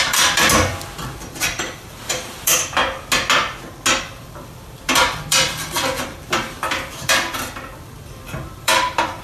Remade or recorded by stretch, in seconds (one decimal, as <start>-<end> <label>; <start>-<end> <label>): 0.0-2.8 remade; 2.8-4.0 recorded; 4.0-9.2 remade